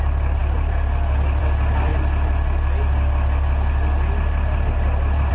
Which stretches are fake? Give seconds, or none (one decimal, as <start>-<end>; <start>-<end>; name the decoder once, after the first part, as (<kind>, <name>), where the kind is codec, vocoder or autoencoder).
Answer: none